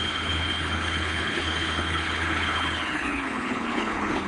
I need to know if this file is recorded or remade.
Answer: remade